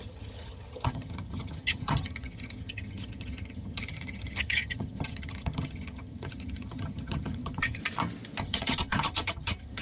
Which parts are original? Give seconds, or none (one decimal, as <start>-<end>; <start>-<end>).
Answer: 7.8-8.4